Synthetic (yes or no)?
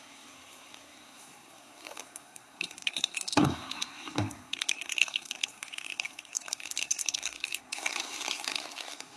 yes